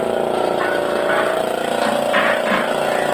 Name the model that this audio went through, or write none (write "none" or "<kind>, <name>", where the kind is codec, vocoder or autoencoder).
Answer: none